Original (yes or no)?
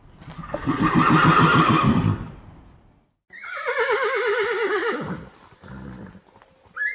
yes